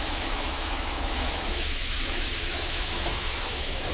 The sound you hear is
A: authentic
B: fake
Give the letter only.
B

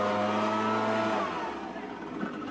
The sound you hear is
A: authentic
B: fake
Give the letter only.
A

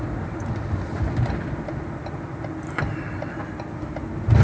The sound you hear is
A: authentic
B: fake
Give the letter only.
A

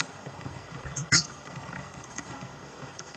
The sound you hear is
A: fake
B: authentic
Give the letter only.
A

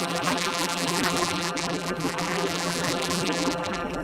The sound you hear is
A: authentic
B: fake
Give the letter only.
B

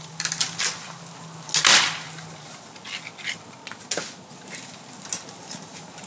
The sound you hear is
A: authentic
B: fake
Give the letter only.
A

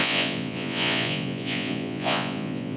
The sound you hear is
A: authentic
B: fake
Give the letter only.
B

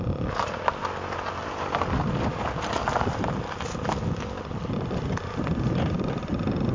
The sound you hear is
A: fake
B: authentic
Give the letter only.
B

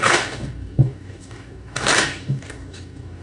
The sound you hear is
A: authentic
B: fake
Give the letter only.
B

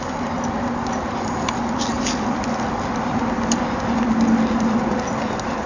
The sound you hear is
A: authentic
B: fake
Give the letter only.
A